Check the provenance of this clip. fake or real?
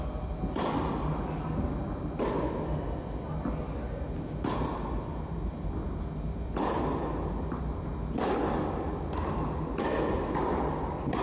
real